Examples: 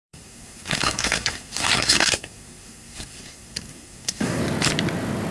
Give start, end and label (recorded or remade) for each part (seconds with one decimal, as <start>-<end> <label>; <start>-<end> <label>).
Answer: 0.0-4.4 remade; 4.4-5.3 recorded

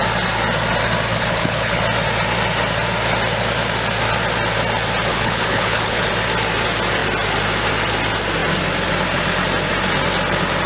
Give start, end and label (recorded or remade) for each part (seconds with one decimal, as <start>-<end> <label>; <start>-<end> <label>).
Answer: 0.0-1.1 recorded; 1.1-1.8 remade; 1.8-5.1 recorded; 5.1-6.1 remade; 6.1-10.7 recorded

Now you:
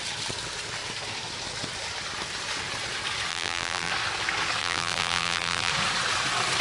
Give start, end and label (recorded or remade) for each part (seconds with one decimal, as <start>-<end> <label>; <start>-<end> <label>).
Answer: 0.0-3.3 recorded; 3.3-3.9 remade; 3.9-4.6 recorded; 4.6-5.7 remade; 5.7-6.6 recorded

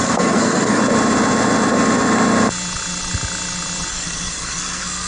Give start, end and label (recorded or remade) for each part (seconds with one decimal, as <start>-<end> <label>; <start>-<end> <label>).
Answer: 0.0-0.8 remade; 0.8-3.9 recorded; 3.9-5.1 remade